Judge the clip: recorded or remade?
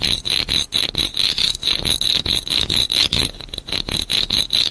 recorded